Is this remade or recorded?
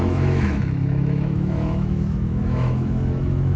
remade